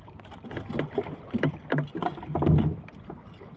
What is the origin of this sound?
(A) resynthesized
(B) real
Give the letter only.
B